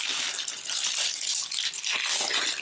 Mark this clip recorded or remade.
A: recorded